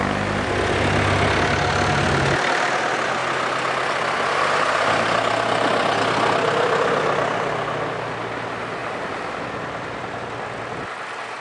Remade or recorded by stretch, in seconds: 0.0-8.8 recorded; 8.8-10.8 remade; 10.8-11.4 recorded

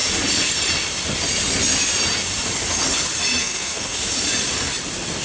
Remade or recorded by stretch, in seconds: 0.0-3.4 recorded; 3.4-4.0 remade; 4.0-5.2 recorded

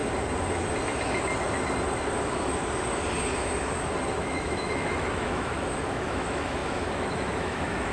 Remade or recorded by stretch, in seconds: 0.0-4.1 recorded; 4.1-7.9 remade

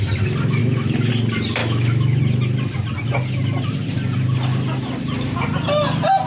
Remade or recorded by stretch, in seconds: 0.0-0.6 recorded; 0.6-1.1 remade; 1.1-1.6 recorded; 1.6-2.2 remade; 2.2-6.3 recorded

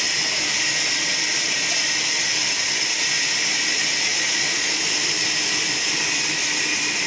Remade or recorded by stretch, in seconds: 0.0-4.1 recorded; 4.1-4.7 remade; 4.7-7.1 recorded